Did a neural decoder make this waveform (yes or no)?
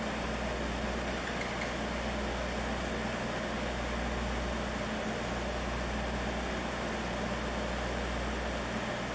no